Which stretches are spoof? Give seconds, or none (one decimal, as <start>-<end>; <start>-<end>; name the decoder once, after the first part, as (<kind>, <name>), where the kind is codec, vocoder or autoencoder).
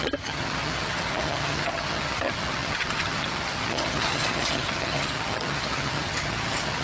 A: 0.0-6.8 (vocoder, HiFi-GAN)